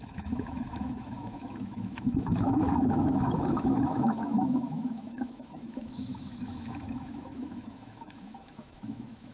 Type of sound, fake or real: fake